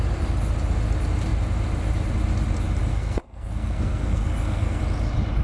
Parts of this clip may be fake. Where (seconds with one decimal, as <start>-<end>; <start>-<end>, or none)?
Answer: 2.9-4.8